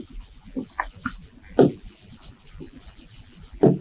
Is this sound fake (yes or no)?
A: no